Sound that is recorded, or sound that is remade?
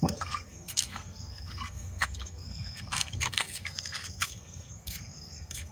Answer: remade